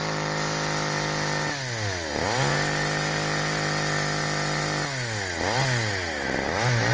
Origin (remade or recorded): recorded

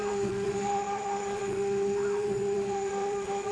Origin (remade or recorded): remade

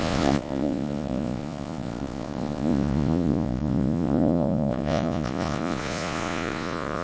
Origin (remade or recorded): remade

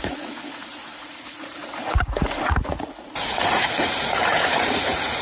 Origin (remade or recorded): remade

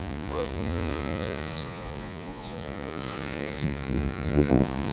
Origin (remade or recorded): remade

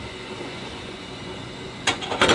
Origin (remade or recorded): remade